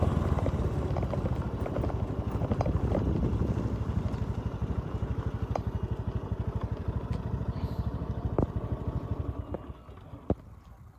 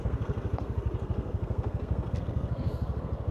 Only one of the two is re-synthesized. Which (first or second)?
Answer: second